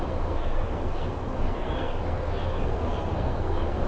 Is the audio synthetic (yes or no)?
yes